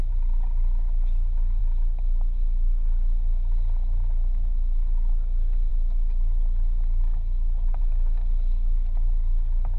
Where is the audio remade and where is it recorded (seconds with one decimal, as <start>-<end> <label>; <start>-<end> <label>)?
0.0-9.8 recorded